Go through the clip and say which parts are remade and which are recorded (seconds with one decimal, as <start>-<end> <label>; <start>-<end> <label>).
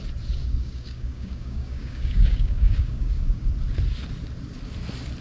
0.0-0.4 recorded; 0.4-3.5 remade; 3.5-5.2 recorded